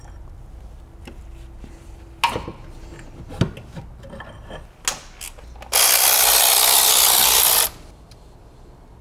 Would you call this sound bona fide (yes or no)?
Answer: yes